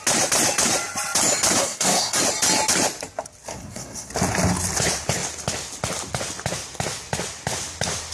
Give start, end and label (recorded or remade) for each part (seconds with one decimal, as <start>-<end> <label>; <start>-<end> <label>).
0.0-1.6 recorded; 1.6-2.2 remade; 2.2-3.5 recorded; 3.5-4.1 remade; 4.1-8.1 recorded